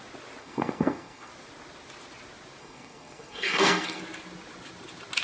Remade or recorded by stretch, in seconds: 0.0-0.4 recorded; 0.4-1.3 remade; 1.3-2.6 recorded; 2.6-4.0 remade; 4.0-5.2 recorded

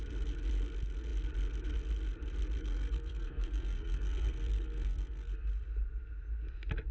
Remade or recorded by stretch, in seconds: 0.0-2.6 recorded; 2.6-5.5 remade; 5.5-6.9 recorded

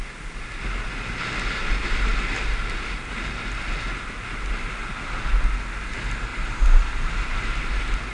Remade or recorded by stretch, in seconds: 0.0-6.3 recorded; 6.3-7.6 remade; 7.6-8.1 recorded